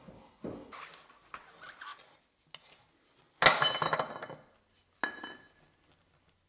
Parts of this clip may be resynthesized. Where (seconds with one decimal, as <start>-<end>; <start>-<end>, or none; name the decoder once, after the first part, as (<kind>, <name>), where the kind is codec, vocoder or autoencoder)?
none